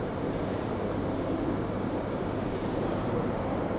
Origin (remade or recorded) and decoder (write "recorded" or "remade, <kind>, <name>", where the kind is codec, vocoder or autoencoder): remade, vocoder, BigVGAN v2